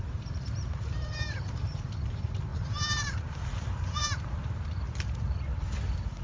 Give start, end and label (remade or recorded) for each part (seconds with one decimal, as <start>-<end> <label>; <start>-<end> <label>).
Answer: 0.0-6.2 remade

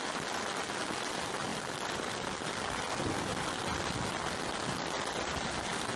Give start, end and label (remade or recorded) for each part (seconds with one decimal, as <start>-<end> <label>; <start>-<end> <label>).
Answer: 0.0-6.0 recorded

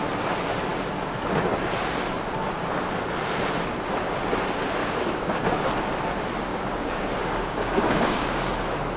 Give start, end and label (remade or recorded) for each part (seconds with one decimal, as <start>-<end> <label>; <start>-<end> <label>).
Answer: 0.0-4.8 recorded; 4.8-5.7 remade; 5.7-6.5 recorded; 6.5-8.5 remade; 8.5-9.0 recorded